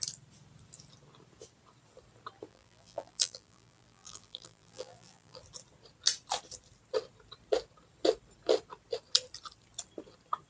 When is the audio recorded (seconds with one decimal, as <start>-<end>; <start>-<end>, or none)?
0.0-2.5; 5.4-10.5